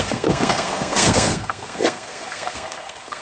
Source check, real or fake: fake